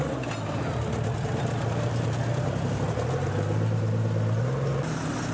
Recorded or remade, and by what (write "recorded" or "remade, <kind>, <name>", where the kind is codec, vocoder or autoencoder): recorded